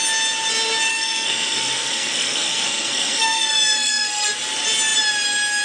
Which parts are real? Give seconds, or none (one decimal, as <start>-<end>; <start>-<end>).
0.0-0.9; 4.3-5.6